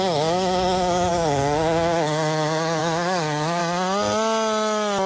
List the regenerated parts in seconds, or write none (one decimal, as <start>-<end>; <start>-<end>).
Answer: 0.0-3.6